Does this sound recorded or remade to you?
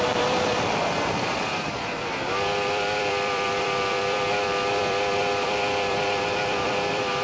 remade